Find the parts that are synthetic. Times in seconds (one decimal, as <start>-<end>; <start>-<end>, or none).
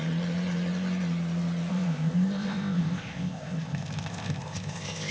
1.7-5.1